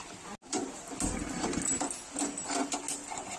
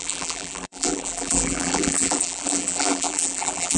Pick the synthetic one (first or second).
second